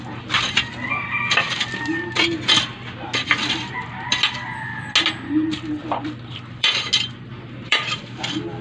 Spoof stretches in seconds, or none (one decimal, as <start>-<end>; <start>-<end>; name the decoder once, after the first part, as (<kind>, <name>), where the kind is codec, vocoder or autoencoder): 5.8-6.7 (vocoder, BigVGAN v2); 7.3-8.2